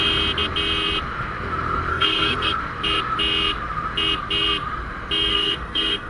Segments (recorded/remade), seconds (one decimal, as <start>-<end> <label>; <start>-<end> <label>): 0.0-1.9 recorded; 1.9-2.6 remade; 2.6-5.3 recorded; 5.3-6.1 remade